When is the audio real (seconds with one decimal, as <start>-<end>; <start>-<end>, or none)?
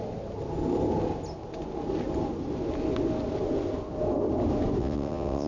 0.0-4.8